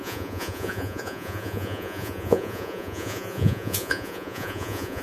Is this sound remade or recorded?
remade